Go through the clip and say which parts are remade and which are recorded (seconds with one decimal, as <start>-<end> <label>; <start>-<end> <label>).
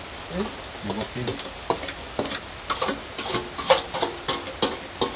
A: 0.0-5.2 recorded